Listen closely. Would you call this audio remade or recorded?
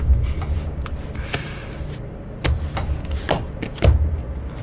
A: recorded